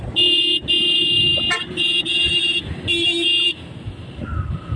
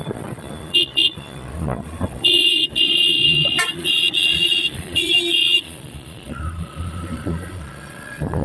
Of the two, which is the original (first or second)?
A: first